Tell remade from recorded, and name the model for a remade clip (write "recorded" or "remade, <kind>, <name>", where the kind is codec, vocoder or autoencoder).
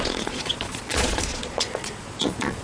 remade, vocoder, Vocos